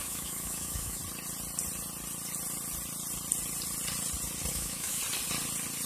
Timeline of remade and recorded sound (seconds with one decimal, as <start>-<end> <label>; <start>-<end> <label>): 0.0-1.0 remade; 1.0-4.5 recorded; 4.5-5.0 remade; 5.0-5.9 recorded